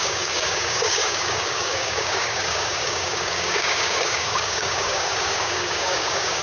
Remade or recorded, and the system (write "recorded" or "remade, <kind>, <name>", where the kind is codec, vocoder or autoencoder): remade, codec, DAC